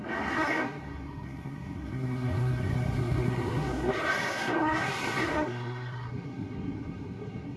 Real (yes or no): no